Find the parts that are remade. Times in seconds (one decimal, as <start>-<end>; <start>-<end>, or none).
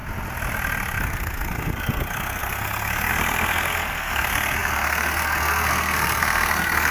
1.0-6.9